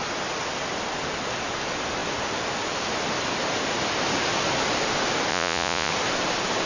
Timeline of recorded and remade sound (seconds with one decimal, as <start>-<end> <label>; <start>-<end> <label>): 0.0-5.3 recorded; 5.3-5.9 remade; 5.9-6.7 recorded